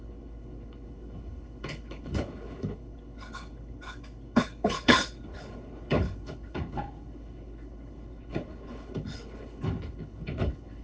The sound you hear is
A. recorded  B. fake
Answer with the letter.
B